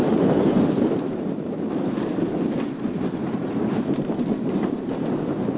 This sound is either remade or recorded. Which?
remade